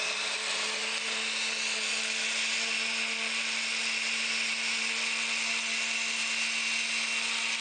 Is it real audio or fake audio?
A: real